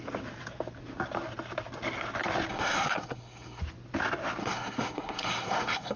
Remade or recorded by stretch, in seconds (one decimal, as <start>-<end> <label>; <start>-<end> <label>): 0.0-2.5 recorded; 2.5-3.6 remade; 3.6-4.4 recorded; 4.4-6.0 remade